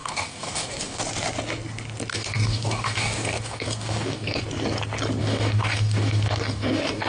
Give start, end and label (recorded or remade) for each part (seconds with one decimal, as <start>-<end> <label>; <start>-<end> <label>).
0.0-1.0 remade; 1.0-2.1 recorded; 2.1-4.4 remade; 4.4-5.2 recorded; 5.2-7.1 remade